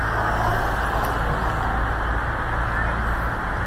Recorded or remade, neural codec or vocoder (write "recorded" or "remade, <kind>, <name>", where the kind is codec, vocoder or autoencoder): recorded